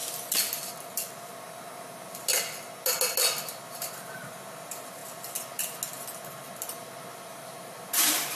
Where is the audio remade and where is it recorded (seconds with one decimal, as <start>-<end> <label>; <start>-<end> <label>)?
0.0-1.1 recorded; 1.1-2.3 remade; 2.3-3.7 recorded; 3.7-5.0 remade; 5.0-6.6 recorded; 6.6-8.4 remade